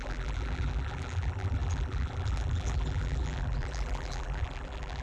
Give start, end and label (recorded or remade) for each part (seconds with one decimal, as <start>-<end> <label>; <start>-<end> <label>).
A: 0.0-5.0 remade